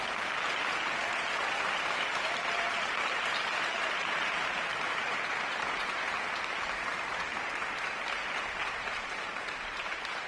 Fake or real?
fake